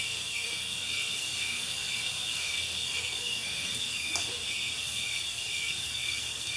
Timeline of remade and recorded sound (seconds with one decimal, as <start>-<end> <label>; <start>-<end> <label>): 0.0-6.6 remade